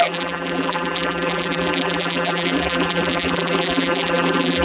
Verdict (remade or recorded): remade